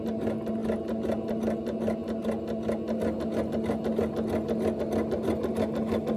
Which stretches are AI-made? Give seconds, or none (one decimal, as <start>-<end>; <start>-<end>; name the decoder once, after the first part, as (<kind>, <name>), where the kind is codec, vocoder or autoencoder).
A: none